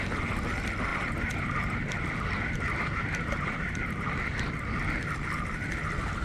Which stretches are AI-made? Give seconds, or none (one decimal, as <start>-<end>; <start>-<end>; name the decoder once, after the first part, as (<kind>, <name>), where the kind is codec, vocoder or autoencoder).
0.9-4.6 (vocoder, BigVGAN v2)